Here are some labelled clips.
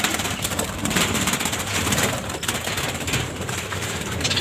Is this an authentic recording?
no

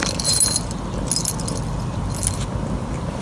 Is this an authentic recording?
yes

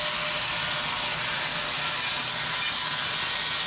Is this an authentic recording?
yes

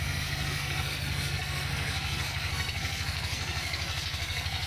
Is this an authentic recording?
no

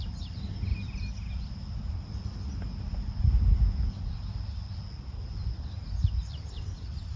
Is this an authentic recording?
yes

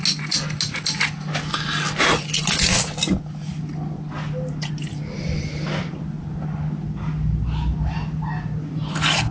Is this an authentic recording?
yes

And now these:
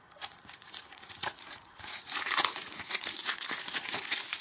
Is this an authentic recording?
no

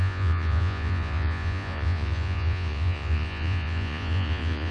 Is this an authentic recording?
no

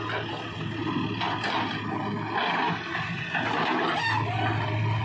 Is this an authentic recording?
yes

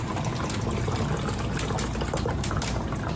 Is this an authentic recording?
yes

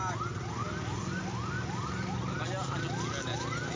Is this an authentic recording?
yes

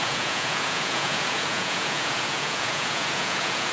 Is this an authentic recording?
no